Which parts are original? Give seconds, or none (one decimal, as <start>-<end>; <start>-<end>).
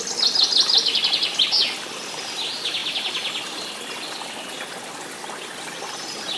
0.0-6.4